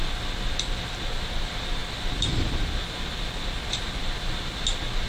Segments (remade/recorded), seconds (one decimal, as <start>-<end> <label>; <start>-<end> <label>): 0.0-5.1 recorded

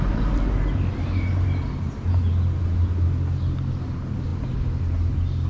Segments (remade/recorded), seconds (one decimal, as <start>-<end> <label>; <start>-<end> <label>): 0.0-5.5 recorded

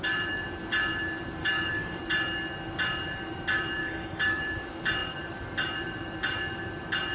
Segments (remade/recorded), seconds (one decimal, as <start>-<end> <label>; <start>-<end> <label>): 0.0-1.4 recorded; 1.4-2.0 remade; 2.0-3.8 recorded; 3.8-4.4 remade; 4.4-7.1 recorded

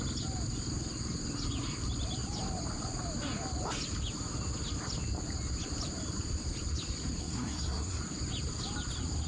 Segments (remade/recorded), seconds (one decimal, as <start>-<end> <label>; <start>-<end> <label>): 0.0-7.2 recorded; 7.2-8.0 remade; 8.0-9.3 recorded

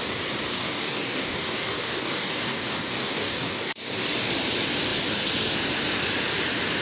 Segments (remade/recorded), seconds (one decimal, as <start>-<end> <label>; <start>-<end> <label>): 0.0-0.5 recorded; 0.5-4.3 remade; 4.3-6.8 recorded

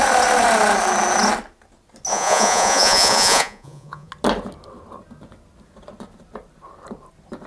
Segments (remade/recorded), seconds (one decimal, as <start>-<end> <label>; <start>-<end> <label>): 0.0-2.1 recorded; 2.1-4.1 remade; 4.1-7.5 recorded

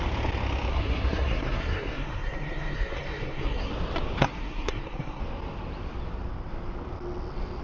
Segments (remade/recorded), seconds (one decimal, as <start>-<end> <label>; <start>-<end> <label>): 0.0-0.7 recorded; 0.7-3.7 remade; 3.7-4.2 recorded; 4.2-5.2 remade; 5.2-7.6 recorded

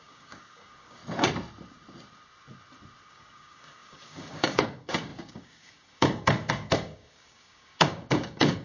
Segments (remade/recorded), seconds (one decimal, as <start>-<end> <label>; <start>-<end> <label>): 0.0-1.0 remade; 1.0-3.1 recorded; 3.1-8.6 remade